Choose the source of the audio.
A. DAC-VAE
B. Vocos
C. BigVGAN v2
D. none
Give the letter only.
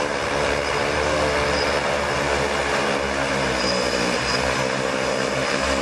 D